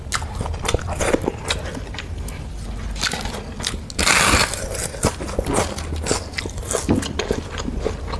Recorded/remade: recorded